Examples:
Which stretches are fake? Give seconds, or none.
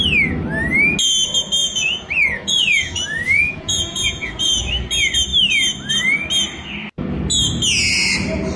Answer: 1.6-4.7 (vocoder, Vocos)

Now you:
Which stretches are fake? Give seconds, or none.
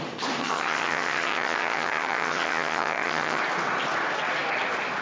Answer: 0.4-3.4 (vocoder, HiFi-GAN)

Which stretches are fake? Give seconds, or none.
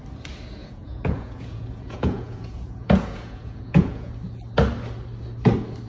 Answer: 0.6-4.1 (vocoder, Vocos)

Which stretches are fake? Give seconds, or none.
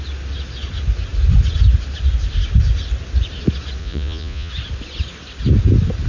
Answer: 3.8-4.5 (vocoder, Vocos)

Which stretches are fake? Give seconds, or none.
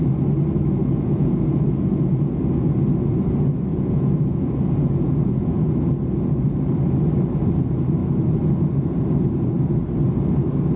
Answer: 0.8-2.4 (vocoder, Vocos); 3.7-5.7